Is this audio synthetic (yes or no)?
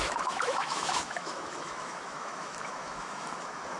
yes